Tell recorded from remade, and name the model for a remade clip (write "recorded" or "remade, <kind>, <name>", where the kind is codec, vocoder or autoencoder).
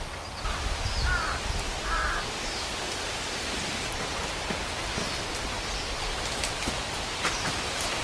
recorded